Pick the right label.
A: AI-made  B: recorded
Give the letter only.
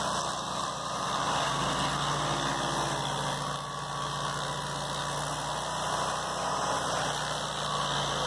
B